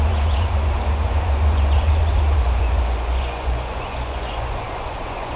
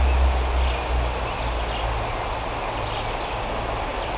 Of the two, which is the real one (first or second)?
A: second